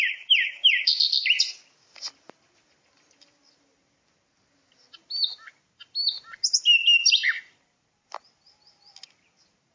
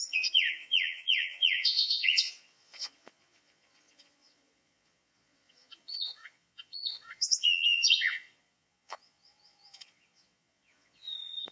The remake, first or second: second